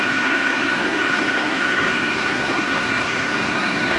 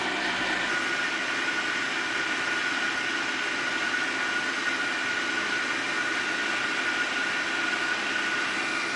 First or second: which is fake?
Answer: first